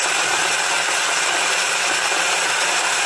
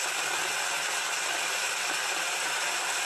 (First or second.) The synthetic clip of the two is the second